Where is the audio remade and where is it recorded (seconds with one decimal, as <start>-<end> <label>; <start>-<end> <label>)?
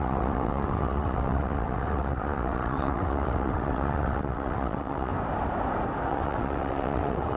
0.0-5.1 remade; 5.1-6.1 recorded; 6.1-7.4 remade